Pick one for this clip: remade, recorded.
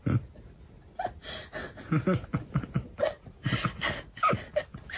recorded